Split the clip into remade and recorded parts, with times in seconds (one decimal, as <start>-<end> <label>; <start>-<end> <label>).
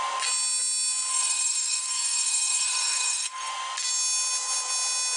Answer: 0.0-1.1 recorded; 1.1-3.5 remade; 3.5-5.2 recorded